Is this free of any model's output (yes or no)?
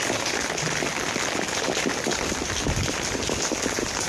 yes